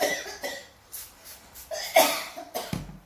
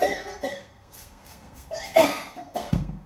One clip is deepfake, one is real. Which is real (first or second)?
first